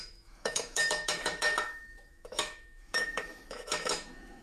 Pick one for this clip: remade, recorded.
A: remade